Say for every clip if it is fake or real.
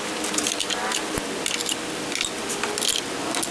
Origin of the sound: real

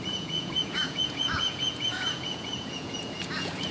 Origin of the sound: fake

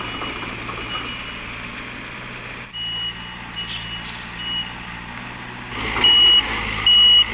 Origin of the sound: real